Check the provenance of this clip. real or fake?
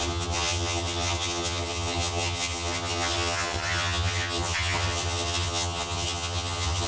fake